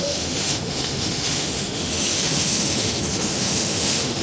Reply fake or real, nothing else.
fake